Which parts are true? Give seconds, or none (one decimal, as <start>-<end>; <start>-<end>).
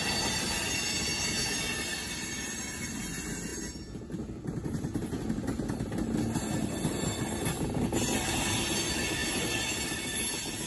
0.0-10.7